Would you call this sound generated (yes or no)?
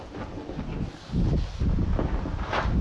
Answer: no